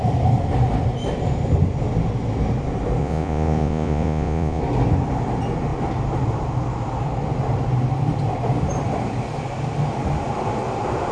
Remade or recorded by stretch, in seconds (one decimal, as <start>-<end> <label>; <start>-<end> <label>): 0.0-3.0 recorded; 3.0-4.6 remade; 4.6-11.1 recorded